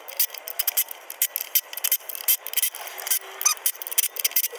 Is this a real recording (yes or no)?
yes